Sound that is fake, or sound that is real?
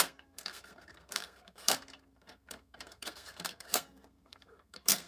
fake